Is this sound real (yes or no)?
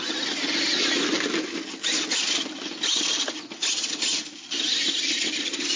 yes